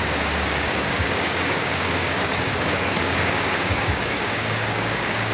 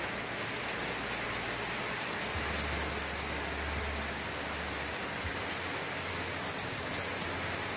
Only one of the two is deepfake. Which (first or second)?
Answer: first